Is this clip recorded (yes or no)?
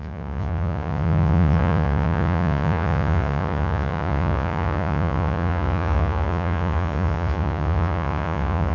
no